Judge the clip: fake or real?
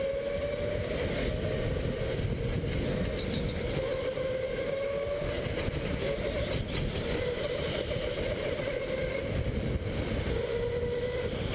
real